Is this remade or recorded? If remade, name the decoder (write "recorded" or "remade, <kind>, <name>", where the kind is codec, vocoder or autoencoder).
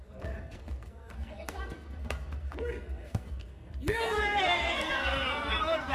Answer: remade, codec, SNAC